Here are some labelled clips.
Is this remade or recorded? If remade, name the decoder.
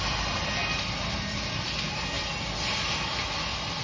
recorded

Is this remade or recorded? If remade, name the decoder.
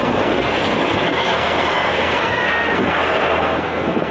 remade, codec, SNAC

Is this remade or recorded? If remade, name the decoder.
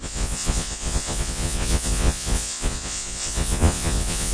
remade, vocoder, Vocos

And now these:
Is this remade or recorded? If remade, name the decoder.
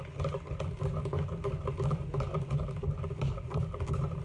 recorded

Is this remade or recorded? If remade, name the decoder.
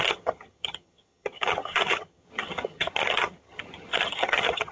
remade, vocoder, HiFi-GAN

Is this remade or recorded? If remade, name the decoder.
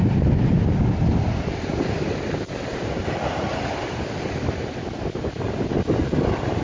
recorded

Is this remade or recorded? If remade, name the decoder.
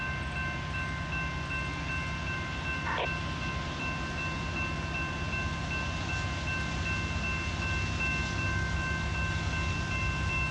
recorded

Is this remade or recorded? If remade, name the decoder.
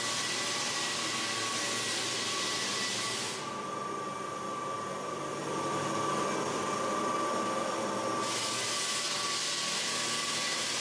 recorded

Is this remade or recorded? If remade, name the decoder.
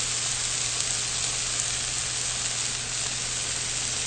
recorded